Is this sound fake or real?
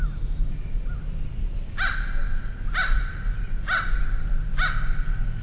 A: real